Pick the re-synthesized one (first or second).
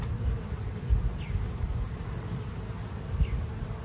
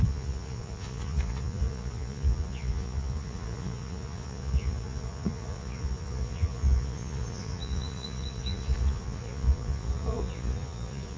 second